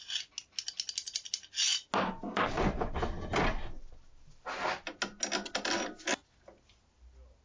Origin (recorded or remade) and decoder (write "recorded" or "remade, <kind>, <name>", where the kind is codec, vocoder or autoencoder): recorded